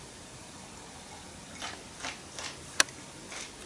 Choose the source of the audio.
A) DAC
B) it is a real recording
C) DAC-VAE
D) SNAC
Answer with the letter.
B